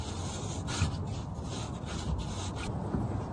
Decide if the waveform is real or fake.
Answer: real